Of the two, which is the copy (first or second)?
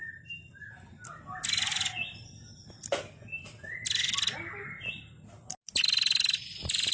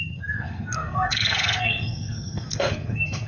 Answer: second